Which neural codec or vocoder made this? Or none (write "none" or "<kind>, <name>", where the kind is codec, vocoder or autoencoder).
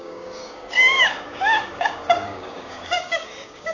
codec, DAC